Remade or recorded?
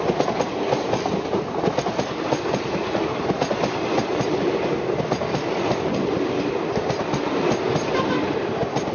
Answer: recorded